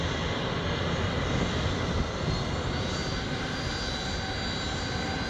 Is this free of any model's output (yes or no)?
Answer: yes